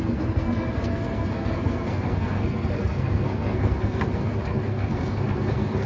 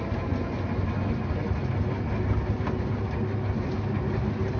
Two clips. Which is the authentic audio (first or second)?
second